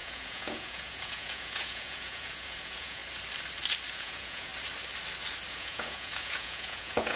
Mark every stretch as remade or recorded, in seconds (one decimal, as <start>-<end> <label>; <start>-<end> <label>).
0.0-3.0 remade; 3.0-3.9 recorded; 3.9-4.5 remade; 4.5-5.5 recorded; 5.5-7.2 remade